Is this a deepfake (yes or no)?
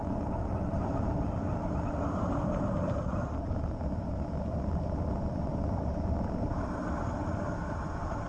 no